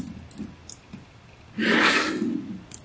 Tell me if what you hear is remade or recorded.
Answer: recorded